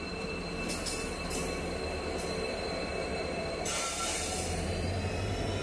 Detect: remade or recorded recorded